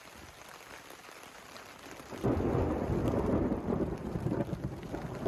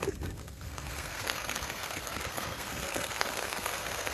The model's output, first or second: second